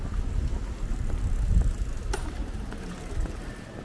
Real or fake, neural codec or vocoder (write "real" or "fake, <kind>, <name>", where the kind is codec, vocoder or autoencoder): real